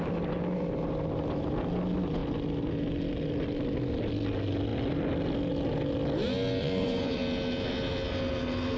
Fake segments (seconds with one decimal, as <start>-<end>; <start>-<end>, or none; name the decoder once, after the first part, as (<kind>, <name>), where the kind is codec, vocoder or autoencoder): 6.6-7.2 (vocoder, Vocos)